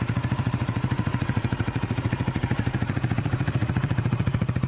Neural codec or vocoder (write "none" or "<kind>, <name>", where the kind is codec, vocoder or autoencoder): vocoder, Vocos